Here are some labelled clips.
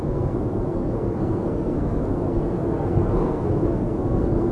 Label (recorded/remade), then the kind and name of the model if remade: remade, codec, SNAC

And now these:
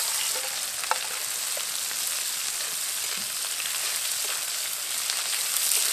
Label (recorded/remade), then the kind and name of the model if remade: recorded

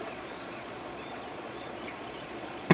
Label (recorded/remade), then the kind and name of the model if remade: remade, vocoder, Vocos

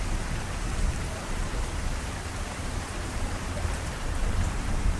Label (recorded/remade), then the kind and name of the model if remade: remade, vocoder, BigVGAN v2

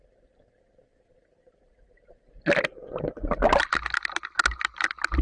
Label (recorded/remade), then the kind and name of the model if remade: recorded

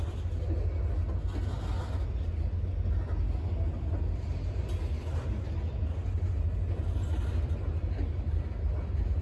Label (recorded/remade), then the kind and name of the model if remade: recorded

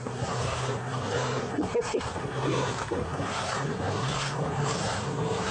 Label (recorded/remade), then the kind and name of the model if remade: remade, codec, SNAC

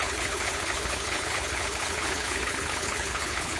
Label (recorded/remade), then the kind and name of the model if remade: remade, codec, HILCodec